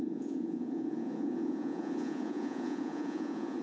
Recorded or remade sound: remade